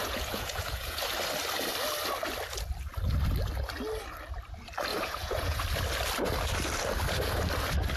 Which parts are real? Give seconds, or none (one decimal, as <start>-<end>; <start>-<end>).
1.0-4.9; 5.6-8.0